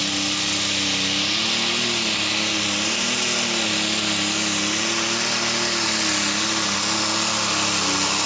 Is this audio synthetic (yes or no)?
no